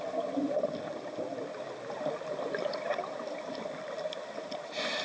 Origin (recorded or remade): recorded